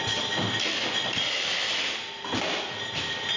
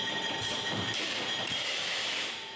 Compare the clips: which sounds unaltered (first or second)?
first